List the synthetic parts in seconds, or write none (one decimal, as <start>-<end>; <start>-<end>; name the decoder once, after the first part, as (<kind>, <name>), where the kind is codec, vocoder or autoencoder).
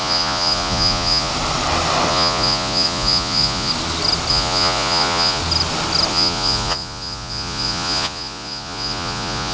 0.0-1.3 (vocoder, Vocos); 2.1-3.7; 4.3-5.4; 6.1-9.5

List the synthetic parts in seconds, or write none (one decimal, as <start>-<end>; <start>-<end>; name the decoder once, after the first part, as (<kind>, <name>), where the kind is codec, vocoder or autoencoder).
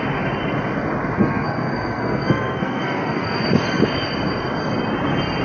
1.2-3.4 (codec, SNAC)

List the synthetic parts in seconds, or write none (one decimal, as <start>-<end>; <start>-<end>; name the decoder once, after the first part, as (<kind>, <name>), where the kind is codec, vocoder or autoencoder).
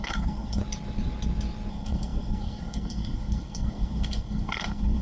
0.0-0.6 (codec, SNAC); 1.7-5.0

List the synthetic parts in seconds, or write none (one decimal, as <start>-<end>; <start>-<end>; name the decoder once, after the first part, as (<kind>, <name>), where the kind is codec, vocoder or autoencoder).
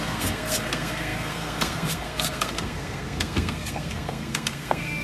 0.0-5.0 (codec, SNAC)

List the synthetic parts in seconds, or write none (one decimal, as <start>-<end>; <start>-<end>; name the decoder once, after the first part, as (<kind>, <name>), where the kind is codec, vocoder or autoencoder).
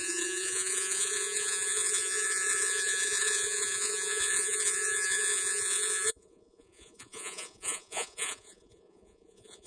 0.0-9.7 (vocoder, Vocos)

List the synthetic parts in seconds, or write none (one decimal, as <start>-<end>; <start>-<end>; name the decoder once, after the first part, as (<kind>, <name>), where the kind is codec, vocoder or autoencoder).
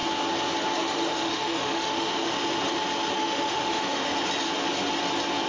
1.1-2.4 (autoencoder, DAC-VAE); 3.2-4.1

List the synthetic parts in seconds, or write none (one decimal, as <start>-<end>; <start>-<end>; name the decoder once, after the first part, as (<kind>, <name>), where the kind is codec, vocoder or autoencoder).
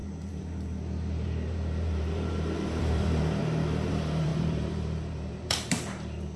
0.0-3.4 (vocoder, BigVGAN v2); 3.9-6.4